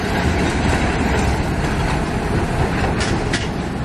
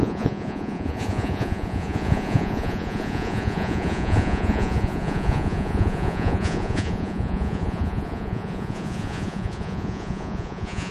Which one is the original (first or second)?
first